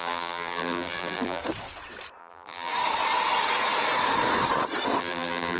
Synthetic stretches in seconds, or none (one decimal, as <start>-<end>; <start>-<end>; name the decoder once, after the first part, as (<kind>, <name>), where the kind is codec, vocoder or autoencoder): 0.0-1.4 (vocoder, BigVGAN v2); 2.2-2.7; 5.0-5.6